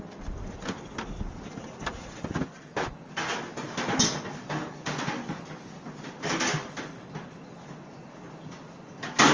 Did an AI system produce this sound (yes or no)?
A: no